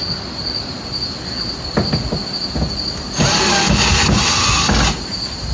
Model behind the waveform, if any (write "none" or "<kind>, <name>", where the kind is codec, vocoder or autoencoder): none